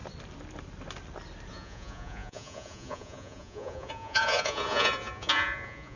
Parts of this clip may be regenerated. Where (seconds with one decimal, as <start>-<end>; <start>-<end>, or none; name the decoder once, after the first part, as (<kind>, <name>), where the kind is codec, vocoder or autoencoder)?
1.5-6.0 (vocoder, Vocos)